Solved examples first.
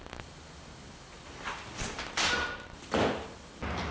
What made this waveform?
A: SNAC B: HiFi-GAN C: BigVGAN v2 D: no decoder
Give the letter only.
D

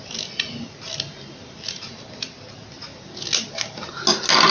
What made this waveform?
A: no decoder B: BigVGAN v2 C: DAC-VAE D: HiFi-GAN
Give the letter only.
A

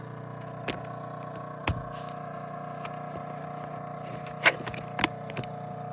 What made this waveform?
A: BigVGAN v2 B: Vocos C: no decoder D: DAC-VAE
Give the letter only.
C